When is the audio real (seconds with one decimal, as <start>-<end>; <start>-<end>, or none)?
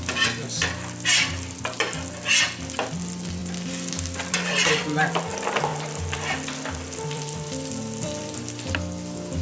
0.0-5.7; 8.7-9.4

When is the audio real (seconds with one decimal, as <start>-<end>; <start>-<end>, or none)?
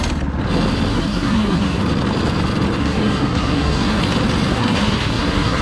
0.0-0.9; 1.8-2.8; 4.0-4.5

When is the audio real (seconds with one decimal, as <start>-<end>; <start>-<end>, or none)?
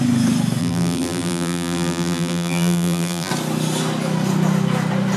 0.0-0.6; 3.3-5.2